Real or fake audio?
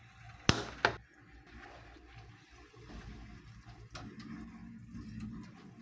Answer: real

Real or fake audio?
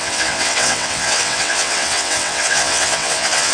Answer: fake